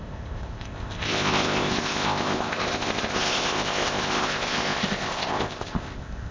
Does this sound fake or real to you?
fake